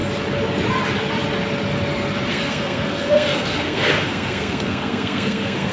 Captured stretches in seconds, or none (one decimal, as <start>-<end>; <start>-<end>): 0.0-2.3